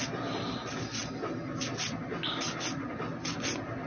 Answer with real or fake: real